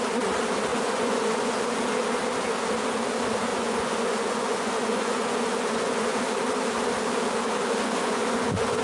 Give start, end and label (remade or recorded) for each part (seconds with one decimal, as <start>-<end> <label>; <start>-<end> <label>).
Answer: 0.0-0.7 recorded; 0.7-1.5 remade; 1.5-3.5 recorded; 3.5-6.2 remade; 6.2-7.8 recorded; 7.8-8.8 remade